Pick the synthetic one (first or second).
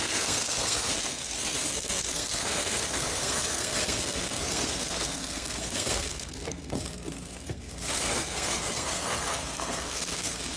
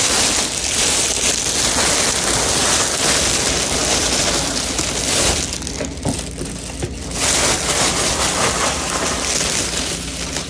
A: first